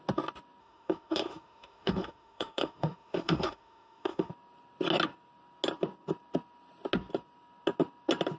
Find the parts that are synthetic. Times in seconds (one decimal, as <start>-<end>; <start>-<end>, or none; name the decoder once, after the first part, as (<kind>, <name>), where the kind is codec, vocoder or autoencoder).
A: 0.6-4.3 (autoencoder, DAC-VAE)